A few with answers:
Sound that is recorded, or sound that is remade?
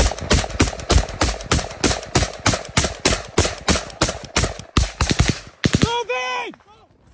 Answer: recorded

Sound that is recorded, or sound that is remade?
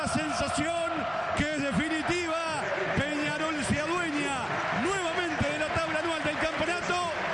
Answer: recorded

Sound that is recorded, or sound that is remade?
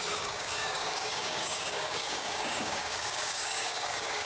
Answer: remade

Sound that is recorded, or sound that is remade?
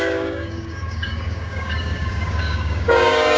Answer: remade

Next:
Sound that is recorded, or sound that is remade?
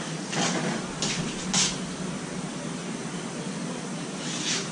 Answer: recorded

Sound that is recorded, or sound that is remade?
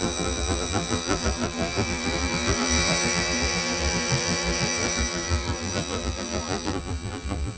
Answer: remade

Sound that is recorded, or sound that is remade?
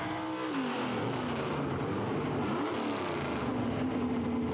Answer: recorded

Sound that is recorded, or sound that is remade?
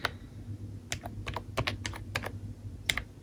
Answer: recorded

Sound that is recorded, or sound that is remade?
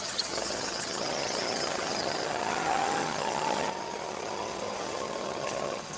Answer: remade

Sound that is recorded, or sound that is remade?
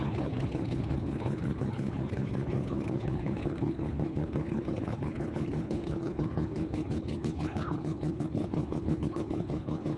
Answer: remade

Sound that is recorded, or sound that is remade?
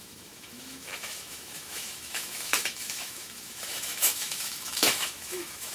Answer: remade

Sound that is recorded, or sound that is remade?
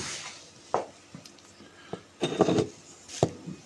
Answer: recorded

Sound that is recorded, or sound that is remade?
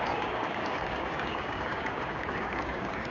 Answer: remade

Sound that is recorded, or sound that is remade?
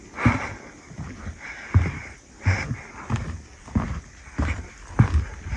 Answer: recorded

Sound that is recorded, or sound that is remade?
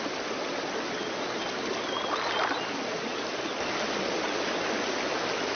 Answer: recorded